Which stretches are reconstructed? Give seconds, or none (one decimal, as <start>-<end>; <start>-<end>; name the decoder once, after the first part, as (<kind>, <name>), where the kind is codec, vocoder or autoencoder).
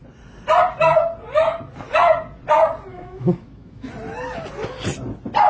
2.9-3.9 (autoencoder, DAC-VAE)